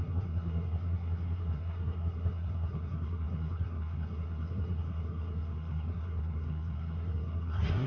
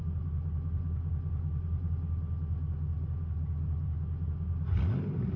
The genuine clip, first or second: second